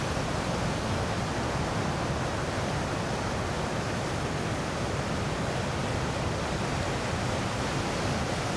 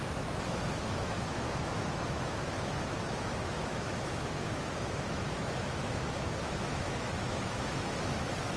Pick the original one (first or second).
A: first